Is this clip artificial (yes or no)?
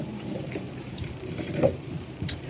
yes